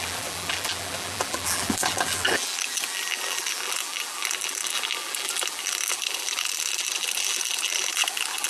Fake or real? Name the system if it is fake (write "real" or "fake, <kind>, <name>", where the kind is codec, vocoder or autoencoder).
fake, vocoder, BigVGAN v2